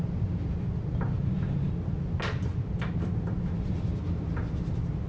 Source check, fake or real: real